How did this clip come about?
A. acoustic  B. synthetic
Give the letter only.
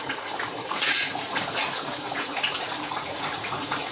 B